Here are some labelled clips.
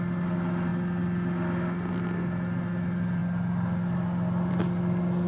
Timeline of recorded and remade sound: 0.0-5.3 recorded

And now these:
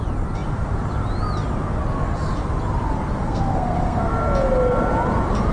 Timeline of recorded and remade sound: 0.0-3.2 recorded; 3.2-4.1 remade; 4.1-5.5 recorded

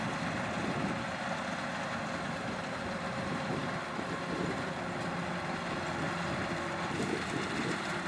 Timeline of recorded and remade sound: 0.0-8.1 recorded

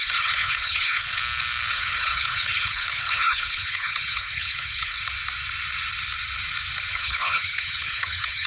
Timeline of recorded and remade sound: 0.0-1.2 remade; 1.2-1.7 recorded; 1.7-5.0 remade; 5.0-6.9 recorded; 6.9-8.5 remade

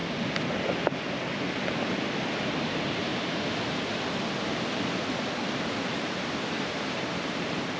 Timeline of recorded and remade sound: 0.0-2.4 recorded; 2.4-3.1 remade; 3.1-5.9 recorded; 5.9-7.8 remade